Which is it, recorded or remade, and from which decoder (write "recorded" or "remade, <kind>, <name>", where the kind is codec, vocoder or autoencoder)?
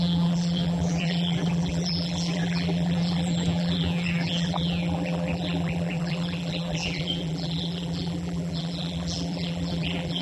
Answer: remade, vocoder, BigVGAN v2